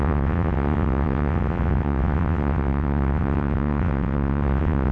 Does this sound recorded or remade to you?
remade